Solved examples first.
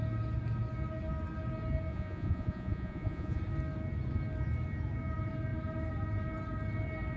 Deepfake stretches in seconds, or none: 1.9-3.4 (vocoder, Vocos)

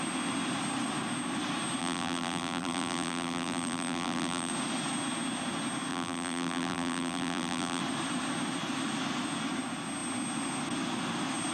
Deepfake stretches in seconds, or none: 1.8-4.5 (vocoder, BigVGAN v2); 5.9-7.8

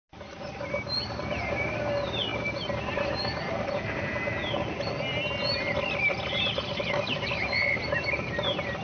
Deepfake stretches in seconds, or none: none